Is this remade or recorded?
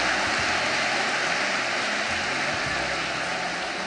recorded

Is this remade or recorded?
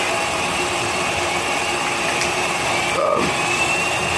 remade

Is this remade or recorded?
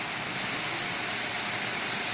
recorded